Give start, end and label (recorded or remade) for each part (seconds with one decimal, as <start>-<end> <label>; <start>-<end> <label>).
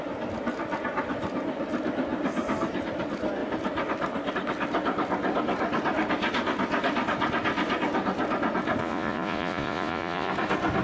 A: 0.0-8.8 recorded; 8.8-10.3 remade; 10.3-10.8 recorded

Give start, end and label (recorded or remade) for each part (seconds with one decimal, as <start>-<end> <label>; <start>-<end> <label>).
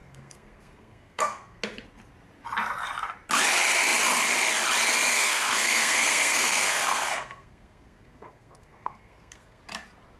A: 0.0-1.6 remade; 1.6-5.1 recorded; 5.1-9.6 remade; 9.6-10.2 recorded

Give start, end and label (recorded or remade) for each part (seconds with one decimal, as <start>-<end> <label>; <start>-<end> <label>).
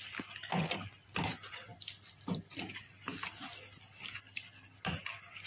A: 0.0-5.5 recorded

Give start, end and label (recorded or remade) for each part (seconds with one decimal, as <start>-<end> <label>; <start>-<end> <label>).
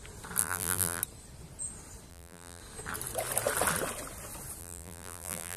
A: 0.0-0.4 recorded; 0.4-1.0 remade; 1.0-2.1 recorded; 2.1-2.6 remade; 2.6-4.6 recorded; 4.6-5.6 remade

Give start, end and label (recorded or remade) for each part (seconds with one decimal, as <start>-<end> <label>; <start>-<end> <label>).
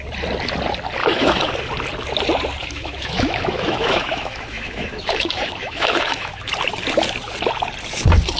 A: 0.0-1.0 recorded; 1.0-1.5 remade; 1.5-2.6 recorded; 2.6-6.5 remade; 6.5-8.4 recorded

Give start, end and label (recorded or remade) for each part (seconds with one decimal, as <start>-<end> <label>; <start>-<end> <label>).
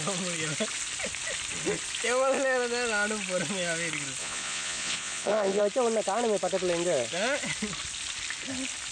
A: 0.0-4.2 recorded; 4.2-5.6 remade; 5.6-8.9 recorded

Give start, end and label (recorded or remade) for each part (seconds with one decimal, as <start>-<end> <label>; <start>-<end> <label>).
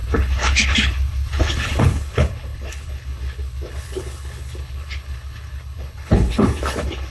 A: 0.0-7.1 remade